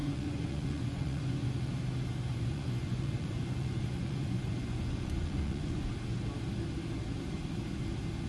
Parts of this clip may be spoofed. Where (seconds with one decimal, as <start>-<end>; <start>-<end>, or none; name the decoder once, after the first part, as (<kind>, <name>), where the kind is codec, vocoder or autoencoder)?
0.0-1.7 (vocoder, Vocos); 2.3-5.9